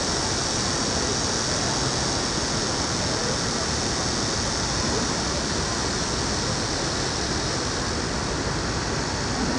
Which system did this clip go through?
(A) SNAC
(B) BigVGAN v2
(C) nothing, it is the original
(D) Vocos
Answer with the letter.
C